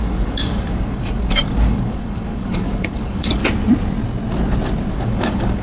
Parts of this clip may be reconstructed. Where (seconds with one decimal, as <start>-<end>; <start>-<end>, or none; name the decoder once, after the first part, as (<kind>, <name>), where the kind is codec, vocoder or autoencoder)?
0.0-3.4 (codec, DAC); 4.9-5.6